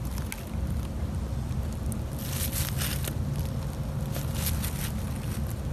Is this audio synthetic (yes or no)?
no